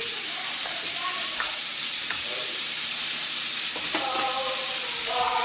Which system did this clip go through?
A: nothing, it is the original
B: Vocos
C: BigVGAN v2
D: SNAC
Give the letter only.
C